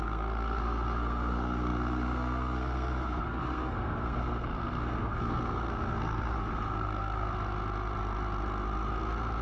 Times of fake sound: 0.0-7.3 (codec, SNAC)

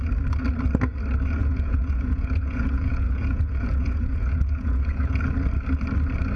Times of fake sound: 1.4-5.2 (vocoder, Vocos)

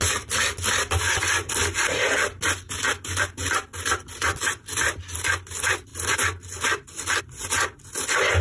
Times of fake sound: none